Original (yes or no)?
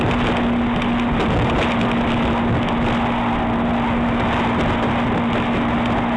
yes